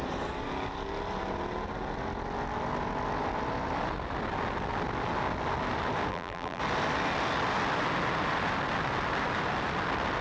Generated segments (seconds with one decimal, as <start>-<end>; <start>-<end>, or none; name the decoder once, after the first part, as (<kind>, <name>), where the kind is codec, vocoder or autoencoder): 6.1-6.6 (vocoder, BigVGAN v2)

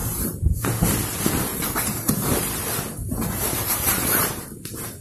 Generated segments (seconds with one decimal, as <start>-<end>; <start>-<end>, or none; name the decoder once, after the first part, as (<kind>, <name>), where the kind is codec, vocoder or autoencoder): 0.0-0.7 (vocoder, BigVGAN v2); 1.5-2.4; 3.0-4.3

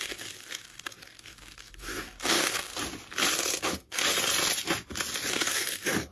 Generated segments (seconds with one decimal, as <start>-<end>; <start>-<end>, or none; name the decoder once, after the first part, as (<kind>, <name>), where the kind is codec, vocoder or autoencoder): 0.0-2.7 (codec, DAC); 3.6-4.0; 5.3-6.1

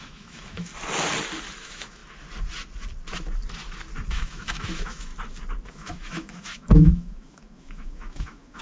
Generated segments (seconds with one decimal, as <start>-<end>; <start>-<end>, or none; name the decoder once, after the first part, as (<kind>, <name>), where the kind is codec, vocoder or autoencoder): 0.0-0.7 (autoencoder, DAC-VAE); 1.6-2.0; 4.1-5.1; 5.7-8.6

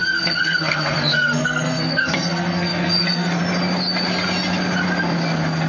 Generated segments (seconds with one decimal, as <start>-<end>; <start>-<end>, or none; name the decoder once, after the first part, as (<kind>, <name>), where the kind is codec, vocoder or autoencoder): 0.0-3.4 (codec, SNAC)